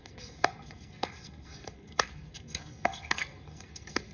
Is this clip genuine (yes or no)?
no